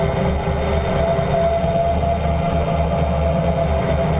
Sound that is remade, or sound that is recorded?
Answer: recorded